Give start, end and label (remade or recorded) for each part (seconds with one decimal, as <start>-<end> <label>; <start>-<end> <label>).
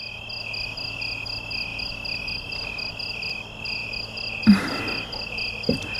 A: 0.0-6.0 recorded